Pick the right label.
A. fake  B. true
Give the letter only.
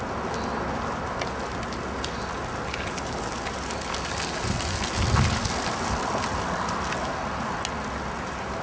B